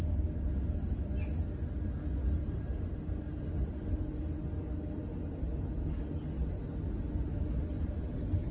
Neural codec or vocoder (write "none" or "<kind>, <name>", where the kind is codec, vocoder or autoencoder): none